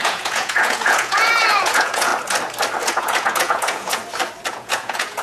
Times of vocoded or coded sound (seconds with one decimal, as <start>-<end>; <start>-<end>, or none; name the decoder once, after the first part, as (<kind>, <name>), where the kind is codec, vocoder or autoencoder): 0.0-2.1 (vocoder, Vocos); 2.8-4.0; 4.5-5.2

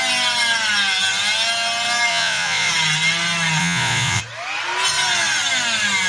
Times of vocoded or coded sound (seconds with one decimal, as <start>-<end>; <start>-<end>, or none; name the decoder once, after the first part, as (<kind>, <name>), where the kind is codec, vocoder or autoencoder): 2.1-2.7 (vocoder, Vocos); 3.6-4.2

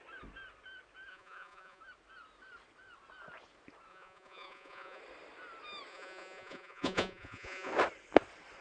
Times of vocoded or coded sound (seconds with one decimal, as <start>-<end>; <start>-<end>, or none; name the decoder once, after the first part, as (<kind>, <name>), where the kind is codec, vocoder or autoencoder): 1.1-1.8 (vocoder, Vocos); 3.9-5.0; 5.9-7.7

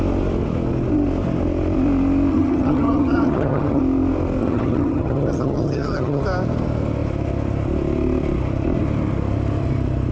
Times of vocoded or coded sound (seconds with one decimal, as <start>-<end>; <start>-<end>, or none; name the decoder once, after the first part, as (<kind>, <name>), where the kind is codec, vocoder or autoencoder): 2.3-3.8 (vocoder, HiFi-GAN); 4.4-6.2